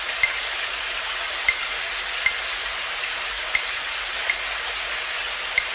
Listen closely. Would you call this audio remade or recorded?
recorded